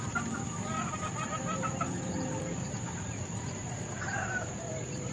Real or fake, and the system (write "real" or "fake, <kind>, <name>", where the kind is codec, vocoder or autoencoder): fake, vocoder, BigVGAN v2